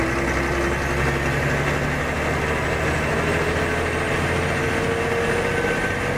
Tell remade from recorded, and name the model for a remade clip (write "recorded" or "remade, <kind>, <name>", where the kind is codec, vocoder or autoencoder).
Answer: recorded